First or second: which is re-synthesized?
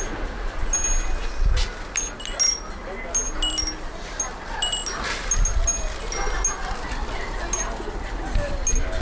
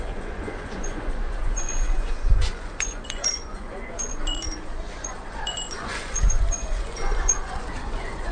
second